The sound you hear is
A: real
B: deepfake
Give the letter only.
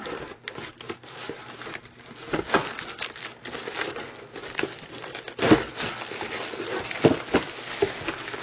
A